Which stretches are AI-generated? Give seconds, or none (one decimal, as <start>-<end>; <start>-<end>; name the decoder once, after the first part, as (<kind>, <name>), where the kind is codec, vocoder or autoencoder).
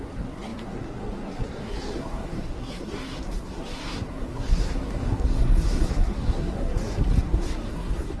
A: 0.0-8.2 (codec, SNAC)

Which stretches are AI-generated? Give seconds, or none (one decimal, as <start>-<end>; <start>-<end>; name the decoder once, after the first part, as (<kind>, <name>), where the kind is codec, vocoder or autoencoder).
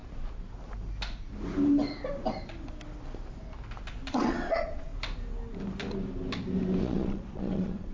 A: 4.1-4.9 (vocoder, Vocos); 6.8-7.9